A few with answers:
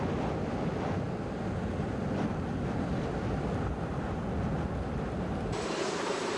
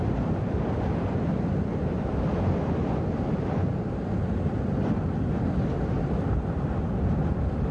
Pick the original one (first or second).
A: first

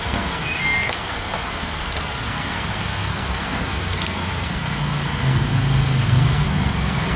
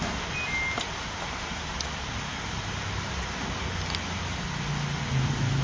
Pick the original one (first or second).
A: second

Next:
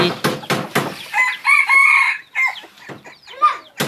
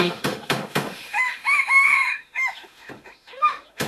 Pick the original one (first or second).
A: first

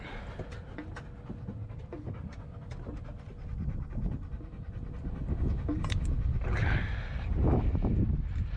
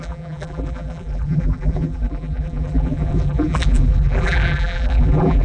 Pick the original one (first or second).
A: first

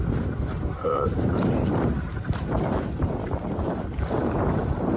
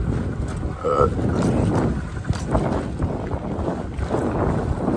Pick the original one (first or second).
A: second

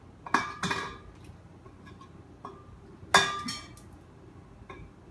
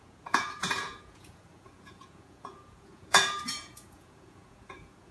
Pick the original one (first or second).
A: first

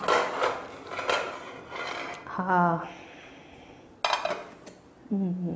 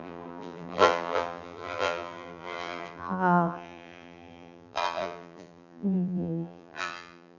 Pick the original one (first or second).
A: first